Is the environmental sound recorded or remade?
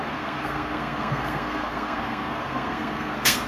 remade